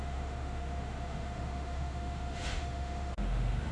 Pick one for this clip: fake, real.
fake